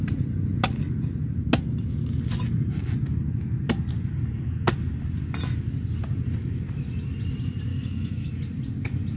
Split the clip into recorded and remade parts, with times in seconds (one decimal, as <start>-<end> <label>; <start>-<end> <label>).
0.0-7.7 recorded; 7.7-8.3 remade; 8.3-9.2 recorded